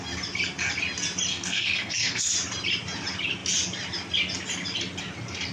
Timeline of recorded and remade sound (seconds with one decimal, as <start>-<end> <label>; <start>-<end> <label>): 0.0-1.3 recorded; 1.3-2.3 remade; 2.3-5.5 recorded